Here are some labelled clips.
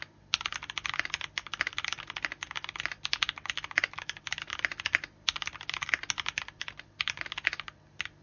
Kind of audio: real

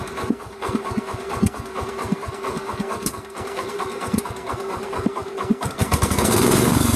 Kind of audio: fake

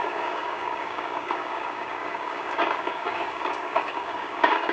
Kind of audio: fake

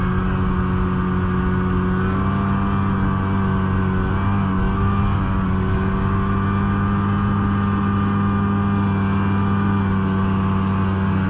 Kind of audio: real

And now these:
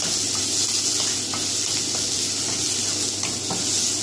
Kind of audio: real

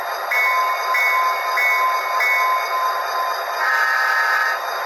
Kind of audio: real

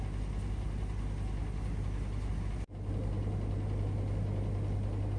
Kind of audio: real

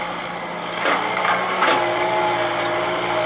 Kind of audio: real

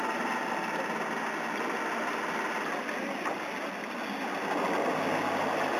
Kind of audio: real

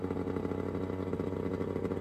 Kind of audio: real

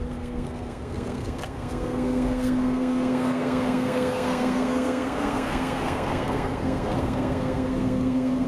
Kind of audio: fake